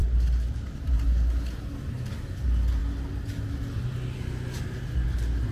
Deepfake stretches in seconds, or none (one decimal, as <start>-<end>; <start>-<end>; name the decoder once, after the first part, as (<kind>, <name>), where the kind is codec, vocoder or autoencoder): none